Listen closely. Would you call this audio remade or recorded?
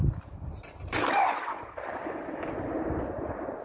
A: recorded